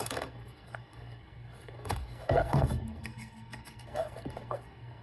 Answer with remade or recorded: remade